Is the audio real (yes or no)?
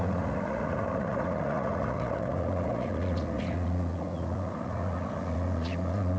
no